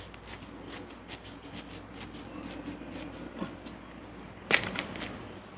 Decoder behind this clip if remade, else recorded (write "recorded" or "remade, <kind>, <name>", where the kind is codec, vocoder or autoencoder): recorded